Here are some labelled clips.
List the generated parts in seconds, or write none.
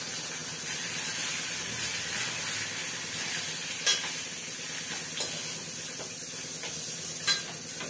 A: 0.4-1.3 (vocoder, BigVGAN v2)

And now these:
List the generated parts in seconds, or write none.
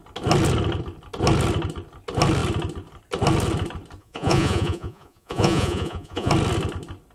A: 4.0-6.3 (vocoder, Vocos)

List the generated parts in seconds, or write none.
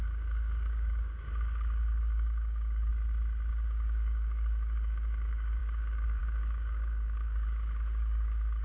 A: 0.0-2.9 (codec, DAC); 3.5-8.6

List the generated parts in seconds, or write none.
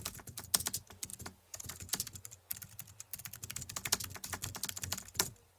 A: 1.1-1.8 (vocoder, Vocos)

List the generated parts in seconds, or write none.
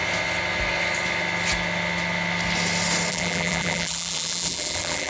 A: 3.1-5.1 (vocoder, BigVGAN v2)